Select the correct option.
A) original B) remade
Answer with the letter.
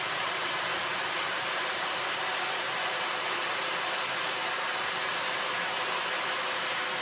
A